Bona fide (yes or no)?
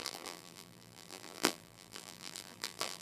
no